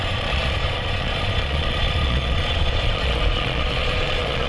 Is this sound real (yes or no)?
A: no